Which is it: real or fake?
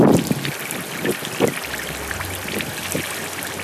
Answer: real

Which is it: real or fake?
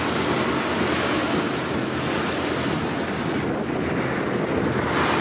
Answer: real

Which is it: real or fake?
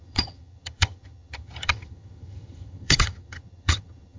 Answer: fake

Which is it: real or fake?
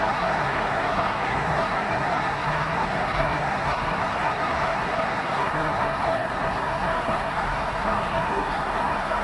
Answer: fake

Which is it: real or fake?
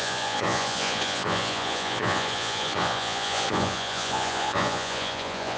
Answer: fake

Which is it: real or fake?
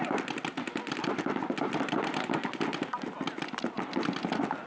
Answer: real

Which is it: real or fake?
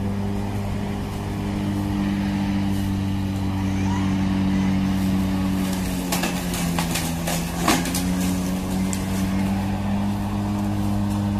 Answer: real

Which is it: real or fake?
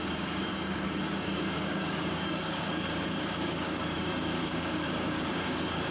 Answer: fake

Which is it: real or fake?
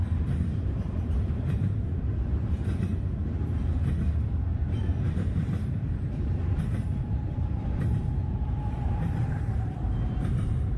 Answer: fake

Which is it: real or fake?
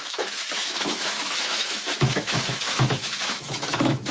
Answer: fake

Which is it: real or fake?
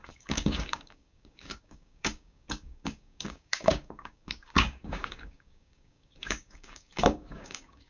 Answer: fake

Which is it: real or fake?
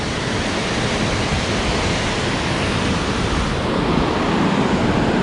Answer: real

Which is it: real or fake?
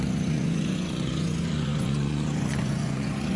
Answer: fake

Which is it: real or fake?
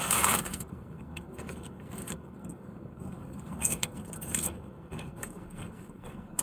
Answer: fake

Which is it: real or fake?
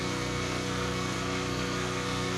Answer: fake